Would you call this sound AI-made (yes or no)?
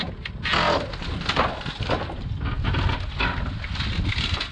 no